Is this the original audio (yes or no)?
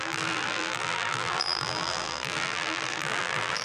no